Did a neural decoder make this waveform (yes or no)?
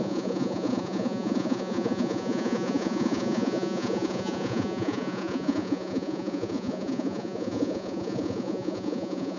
yes